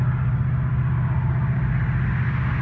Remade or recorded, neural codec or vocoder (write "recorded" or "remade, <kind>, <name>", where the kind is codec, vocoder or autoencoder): recorded